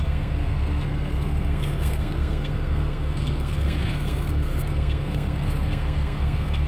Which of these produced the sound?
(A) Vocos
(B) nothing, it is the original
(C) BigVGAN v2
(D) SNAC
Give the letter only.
D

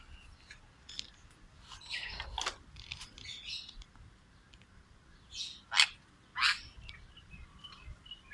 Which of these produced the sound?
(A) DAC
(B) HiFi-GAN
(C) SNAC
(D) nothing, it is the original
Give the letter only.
D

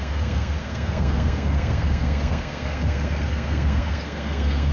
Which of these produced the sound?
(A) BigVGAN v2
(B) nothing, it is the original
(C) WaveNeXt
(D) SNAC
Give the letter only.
D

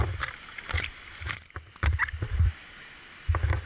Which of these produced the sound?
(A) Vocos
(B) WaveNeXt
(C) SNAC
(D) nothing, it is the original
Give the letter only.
D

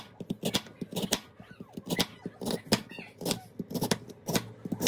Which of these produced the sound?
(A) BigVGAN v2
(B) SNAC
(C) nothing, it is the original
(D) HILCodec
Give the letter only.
C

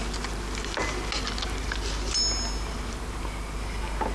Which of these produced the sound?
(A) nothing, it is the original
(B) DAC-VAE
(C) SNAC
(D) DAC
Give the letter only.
A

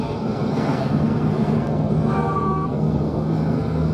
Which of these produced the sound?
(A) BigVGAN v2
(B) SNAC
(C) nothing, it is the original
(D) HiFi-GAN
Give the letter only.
B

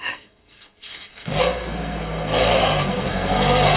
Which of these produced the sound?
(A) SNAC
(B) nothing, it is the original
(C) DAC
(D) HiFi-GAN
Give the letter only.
A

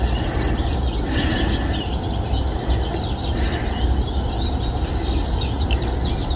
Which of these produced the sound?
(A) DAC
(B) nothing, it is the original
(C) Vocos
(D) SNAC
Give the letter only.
B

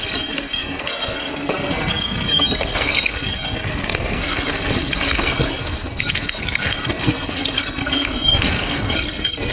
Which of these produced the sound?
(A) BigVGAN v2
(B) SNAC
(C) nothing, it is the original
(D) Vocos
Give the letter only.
B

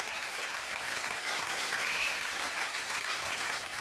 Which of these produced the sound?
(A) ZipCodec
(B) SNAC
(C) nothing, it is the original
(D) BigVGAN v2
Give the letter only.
B